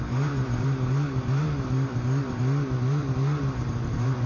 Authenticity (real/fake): fake